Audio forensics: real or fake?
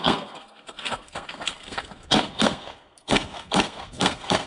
fake